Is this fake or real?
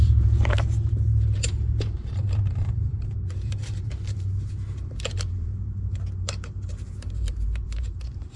fake